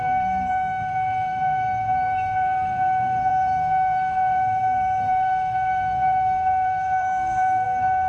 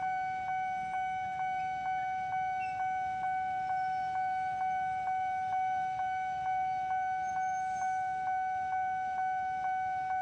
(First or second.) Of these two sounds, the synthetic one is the first